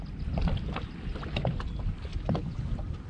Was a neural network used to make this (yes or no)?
no